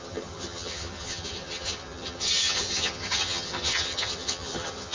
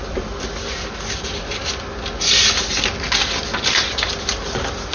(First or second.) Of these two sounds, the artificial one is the first